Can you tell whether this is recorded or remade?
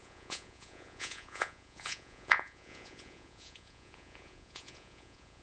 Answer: remade